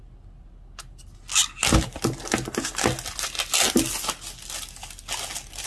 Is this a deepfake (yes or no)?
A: no